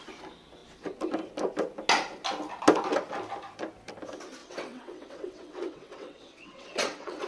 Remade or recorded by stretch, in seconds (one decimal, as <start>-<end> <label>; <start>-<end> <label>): 0.0-4.4 recorded; 4.4-7.3 remade

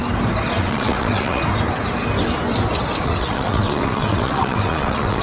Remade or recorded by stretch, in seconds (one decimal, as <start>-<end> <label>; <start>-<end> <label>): 0.0-0.6 recorded; 0.6-1.4 remade; 1.4-3.0 recorded; 3.0-5.2 remade

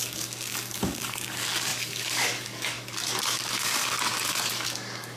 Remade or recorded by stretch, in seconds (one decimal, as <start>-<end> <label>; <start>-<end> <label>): 0.0-5.2 remade